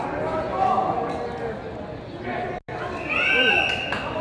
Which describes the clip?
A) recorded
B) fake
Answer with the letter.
A